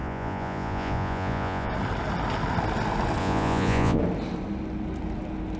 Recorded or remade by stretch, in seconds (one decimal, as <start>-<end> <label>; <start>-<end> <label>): 0.0-1.7 remade; 1.7-3.2 recorded; 3.2-4.0 remade; 4.0-5.6 recorded